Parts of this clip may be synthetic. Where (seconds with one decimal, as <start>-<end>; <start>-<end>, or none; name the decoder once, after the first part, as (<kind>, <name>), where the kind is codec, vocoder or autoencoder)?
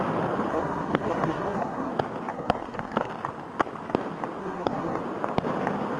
0.5-1.9 (codec, SNAC); 2.3-3.1; 4.4-5.0